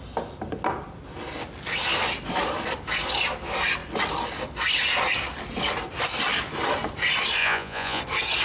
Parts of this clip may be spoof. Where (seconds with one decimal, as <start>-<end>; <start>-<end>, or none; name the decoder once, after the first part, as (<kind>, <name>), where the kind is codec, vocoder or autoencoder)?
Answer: 7.4-8.0 (vocoder, Vocos)